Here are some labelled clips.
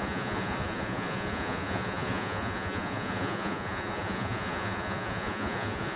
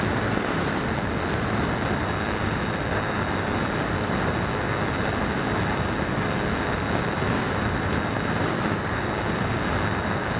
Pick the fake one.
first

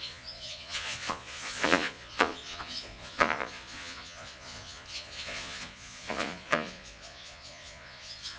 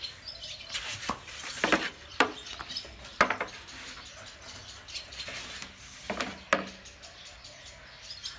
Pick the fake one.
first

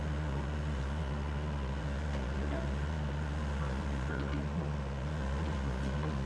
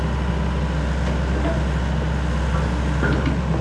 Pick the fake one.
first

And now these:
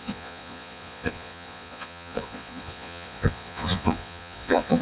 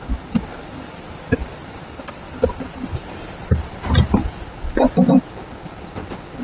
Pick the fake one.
first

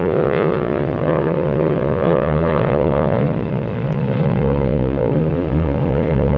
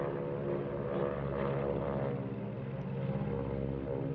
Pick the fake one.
first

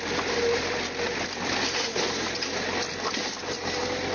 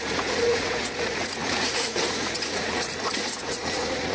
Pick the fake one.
second